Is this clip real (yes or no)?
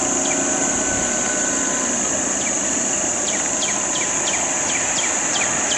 yes